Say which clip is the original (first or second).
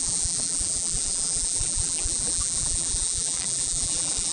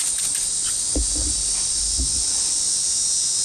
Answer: second